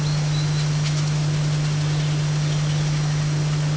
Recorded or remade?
recorded